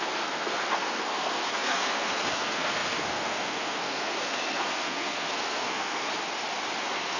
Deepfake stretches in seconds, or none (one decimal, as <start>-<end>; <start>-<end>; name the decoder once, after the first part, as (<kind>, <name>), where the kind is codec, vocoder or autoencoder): 0.0-6.1 (codec, SNAC); 6.8-7.2